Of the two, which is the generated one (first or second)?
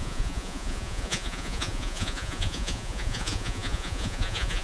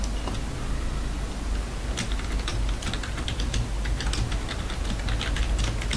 first